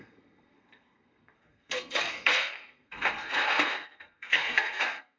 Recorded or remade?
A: remade